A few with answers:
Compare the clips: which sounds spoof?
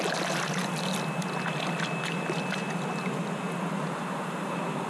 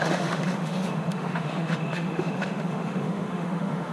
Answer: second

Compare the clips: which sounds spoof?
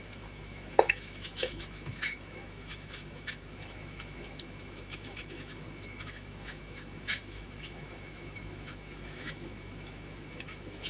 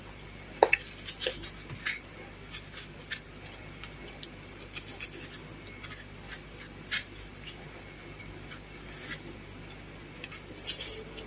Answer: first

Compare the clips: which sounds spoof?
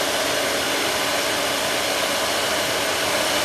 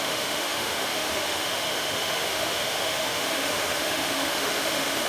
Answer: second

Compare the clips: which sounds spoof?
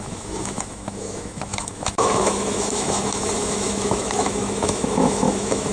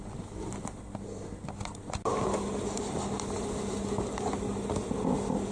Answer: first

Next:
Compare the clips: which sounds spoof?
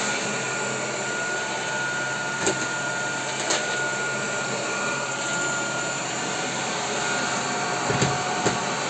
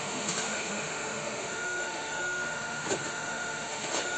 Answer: second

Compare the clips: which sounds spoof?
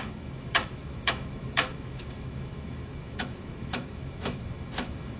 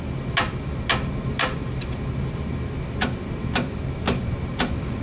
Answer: first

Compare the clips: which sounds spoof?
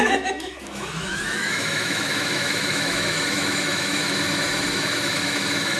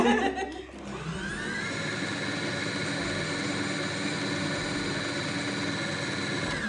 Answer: first